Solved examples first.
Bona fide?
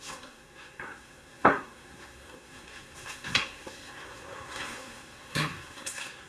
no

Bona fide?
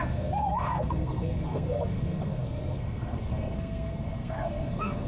no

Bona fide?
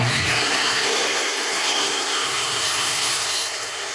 no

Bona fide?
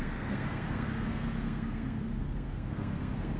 no